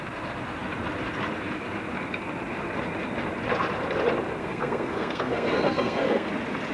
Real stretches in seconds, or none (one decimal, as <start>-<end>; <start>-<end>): 0.0-4.4; 6.3-6.7